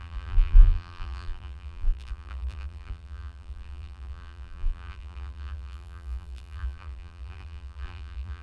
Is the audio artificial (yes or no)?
yes